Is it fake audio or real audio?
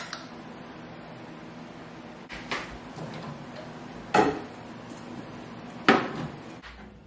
real